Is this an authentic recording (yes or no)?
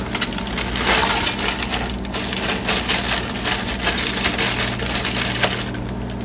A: yes